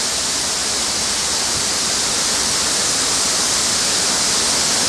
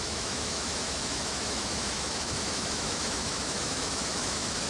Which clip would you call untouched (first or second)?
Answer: first